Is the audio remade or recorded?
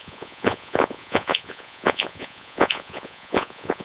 remade